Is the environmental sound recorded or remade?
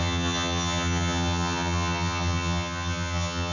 remade